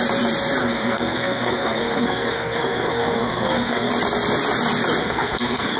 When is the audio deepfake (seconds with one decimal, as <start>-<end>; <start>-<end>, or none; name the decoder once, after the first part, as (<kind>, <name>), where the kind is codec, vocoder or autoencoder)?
0.6-3.9 (codec, SNAC); 5.0-5.8